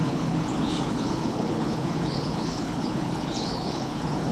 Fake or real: fake